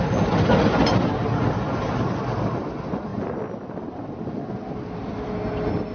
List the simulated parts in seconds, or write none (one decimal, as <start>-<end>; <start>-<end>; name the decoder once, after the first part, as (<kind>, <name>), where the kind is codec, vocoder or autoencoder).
none